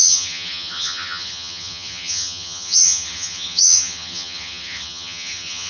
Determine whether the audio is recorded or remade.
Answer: remade